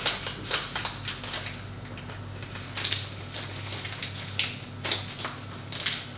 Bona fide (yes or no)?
yes